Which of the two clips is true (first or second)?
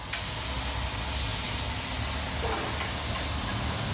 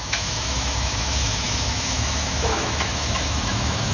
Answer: first